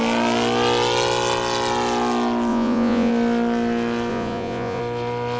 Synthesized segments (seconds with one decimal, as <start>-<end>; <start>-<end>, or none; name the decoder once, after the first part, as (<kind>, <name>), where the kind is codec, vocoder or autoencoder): 2.5-3.1 (vocoder, Vocos); 4.1-4.8